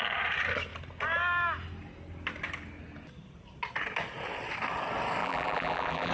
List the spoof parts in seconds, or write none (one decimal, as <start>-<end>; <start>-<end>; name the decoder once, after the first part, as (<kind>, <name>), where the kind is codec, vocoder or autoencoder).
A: 5.2-6.1 (vocoder, BigVGAN v2)

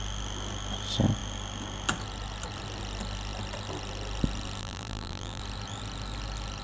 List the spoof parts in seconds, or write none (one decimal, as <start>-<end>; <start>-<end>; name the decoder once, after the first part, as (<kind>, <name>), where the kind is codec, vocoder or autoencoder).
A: 4.6-5.4 (vocoder, BigVGAN v2)

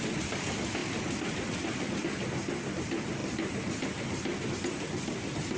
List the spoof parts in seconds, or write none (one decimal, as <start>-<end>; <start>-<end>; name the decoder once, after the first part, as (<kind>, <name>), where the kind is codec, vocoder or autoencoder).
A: 0.8-2.0 (vocoder, BigVGAN v2)

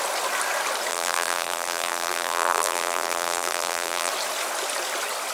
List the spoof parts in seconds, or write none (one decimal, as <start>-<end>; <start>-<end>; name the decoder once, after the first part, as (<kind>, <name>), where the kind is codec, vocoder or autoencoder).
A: 0.9-4.1 (vocoder, BigVGAN v2)

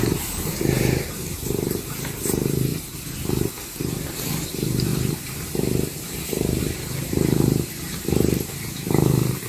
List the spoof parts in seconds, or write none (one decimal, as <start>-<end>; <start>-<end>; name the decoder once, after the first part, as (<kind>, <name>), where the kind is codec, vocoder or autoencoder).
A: 0.0-2.7 (vocoder, BigVGAN v2); 3.8-9.5

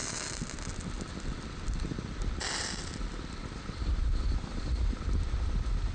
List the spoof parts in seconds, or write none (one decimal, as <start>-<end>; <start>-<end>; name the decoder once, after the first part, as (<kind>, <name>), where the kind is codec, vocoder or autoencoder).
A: 1.1-5.9 (vocoder, BigVGAN v2)

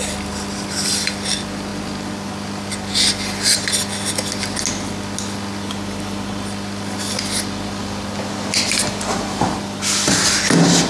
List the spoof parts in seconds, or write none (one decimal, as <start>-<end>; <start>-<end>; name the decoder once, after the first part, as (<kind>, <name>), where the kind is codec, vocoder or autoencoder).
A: none

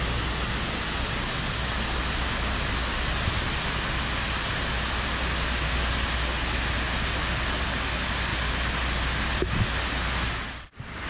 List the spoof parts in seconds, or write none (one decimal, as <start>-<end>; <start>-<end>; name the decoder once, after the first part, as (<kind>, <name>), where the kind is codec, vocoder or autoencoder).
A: none